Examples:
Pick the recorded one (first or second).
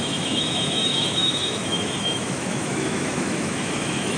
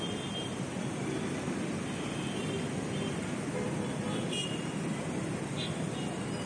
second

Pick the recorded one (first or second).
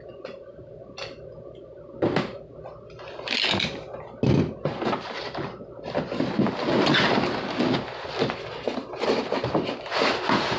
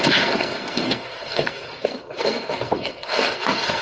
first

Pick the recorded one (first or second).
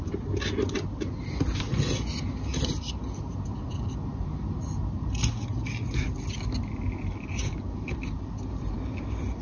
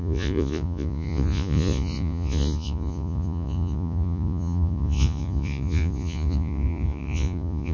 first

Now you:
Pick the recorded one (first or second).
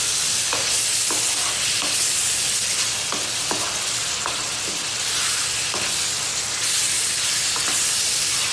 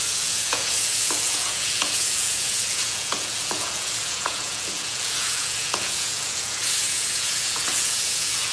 first